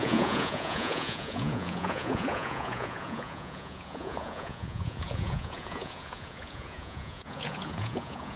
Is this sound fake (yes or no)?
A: yes